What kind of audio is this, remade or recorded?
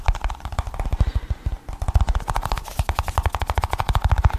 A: recorded